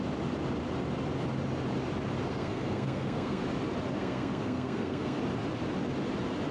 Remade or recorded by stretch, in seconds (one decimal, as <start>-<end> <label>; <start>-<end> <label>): 0.0-2.3 recorded; 2.3-3.4 remade; 3.4-4.0 recorded; 4.0-5.2 remade; 5.2-6.5 recorded